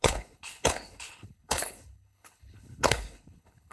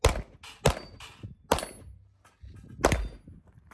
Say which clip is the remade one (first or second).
first